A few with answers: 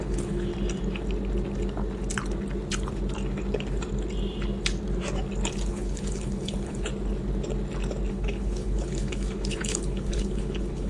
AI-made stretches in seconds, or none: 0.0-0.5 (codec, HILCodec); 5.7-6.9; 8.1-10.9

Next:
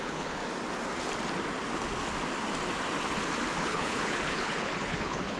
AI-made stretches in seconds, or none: 0.0-0.4 (codec, HILCodec); 3.6-5.4

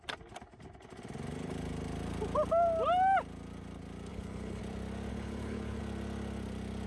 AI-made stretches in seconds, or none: 4.1-4.6 (codec, HILCodec); 5.1-5.8

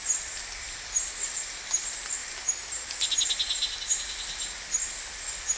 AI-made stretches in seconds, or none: none